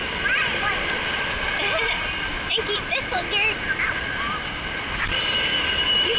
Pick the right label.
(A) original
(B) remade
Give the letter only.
A